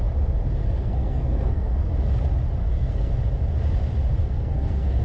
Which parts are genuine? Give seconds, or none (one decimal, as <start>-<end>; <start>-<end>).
0.0-0.6; 1.9-2.6; 3.1-4.2